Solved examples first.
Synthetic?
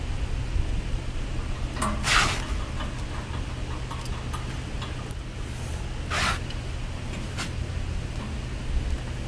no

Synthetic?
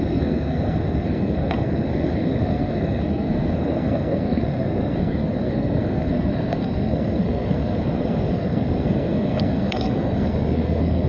yes